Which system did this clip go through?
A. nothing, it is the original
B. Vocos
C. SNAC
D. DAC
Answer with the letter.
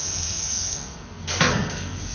C